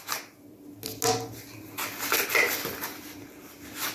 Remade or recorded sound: recorded